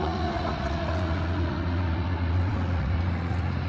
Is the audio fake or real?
fake